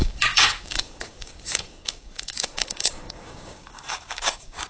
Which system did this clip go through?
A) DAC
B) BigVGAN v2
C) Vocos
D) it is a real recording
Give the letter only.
A